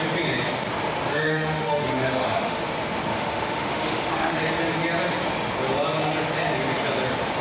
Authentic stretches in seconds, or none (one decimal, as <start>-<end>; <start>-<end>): 0.0-1.1; 2.6-3.1; 4.4-7.4